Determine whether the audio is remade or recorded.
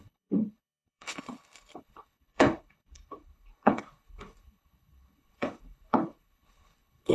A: remade